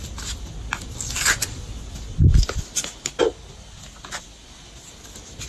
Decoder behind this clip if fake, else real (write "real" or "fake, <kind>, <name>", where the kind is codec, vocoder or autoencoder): real